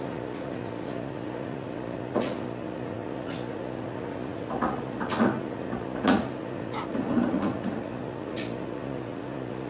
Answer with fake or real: fake